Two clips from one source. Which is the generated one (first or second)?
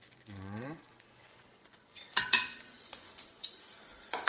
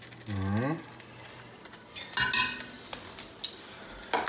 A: first